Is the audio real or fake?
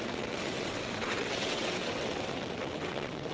fake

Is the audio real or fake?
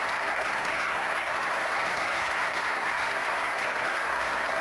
fake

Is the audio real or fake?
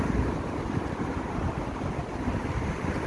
real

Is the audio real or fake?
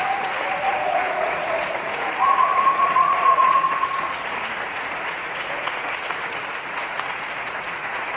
fake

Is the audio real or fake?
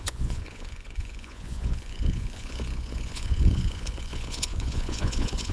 fake